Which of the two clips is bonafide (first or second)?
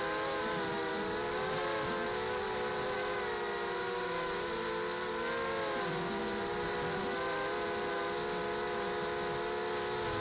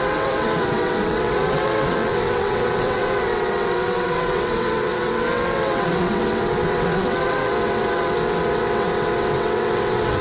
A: first